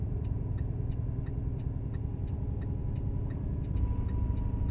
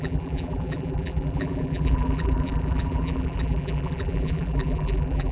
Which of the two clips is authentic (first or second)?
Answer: first